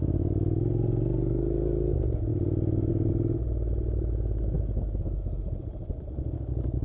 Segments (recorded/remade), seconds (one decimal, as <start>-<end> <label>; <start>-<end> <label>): 0.0-6.8 recorded